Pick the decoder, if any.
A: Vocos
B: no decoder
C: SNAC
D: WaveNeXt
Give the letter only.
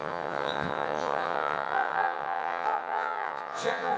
D